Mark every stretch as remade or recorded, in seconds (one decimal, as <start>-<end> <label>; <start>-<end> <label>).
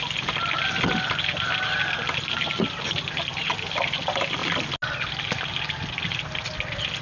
0.0-7.0 recorded